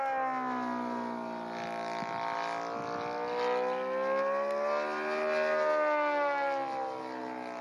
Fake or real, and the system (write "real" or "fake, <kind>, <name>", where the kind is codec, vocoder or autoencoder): real